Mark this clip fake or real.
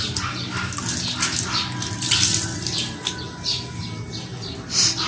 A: real